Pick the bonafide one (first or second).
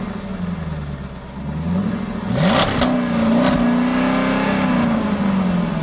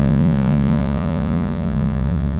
first